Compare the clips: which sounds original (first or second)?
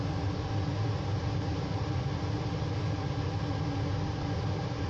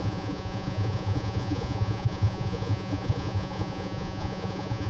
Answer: first